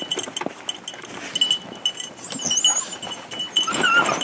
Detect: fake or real real